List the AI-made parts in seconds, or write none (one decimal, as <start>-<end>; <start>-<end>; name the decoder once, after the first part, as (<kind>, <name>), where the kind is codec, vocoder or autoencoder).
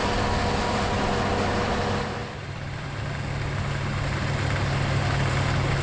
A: 2.2-3.0 (vocoder, BigVGAN v2)